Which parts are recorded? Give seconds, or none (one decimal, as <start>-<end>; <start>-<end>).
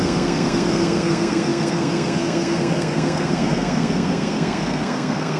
none